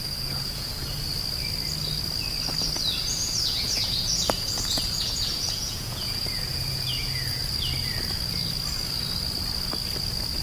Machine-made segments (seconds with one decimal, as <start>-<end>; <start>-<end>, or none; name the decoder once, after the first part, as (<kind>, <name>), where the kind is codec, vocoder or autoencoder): 0.0-0.7 (vocoder, Vocos); 3.0-7.4